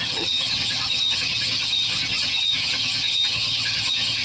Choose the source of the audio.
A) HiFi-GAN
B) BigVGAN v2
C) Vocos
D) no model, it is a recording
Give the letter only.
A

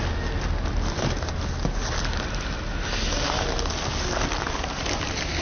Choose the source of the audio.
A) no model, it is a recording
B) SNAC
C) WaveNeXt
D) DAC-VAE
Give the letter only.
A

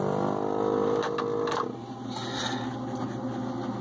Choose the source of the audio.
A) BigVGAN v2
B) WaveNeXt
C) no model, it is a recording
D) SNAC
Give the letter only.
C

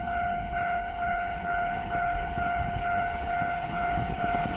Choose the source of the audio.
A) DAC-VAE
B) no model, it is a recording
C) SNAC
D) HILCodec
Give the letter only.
D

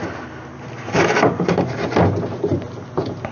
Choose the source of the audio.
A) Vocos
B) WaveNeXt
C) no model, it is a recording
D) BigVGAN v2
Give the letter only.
C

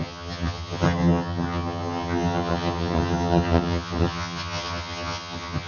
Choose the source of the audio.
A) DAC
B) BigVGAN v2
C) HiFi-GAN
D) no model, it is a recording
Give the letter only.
C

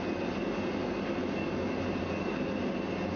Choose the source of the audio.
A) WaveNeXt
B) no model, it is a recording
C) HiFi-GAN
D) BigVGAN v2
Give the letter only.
B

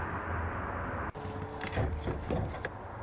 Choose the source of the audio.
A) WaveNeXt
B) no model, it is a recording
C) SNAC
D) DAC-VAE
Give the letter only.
B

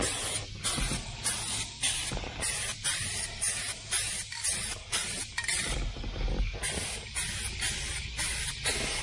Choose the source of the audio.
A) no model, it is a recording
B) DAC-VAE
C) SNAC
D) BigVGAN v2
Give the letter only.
A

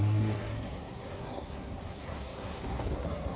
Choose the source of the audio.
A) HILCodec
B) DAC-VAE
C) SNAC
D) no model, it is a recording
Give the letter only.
C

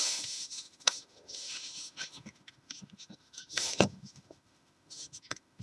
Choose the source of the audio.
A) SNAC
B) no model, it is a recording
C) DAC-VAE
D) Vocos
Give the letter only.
C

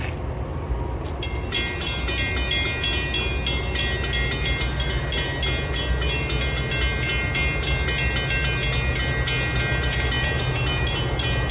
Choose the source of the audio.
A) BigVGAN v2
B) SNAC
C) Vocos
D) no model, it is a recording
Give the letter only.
D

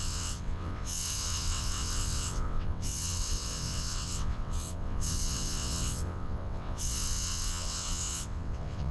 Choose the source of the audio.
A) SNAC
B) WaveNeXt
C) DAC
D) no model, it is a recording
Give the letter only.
B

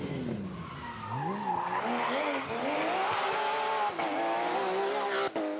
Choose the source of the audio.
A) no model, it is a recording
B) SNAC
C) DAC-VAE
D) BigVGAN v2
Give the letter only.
A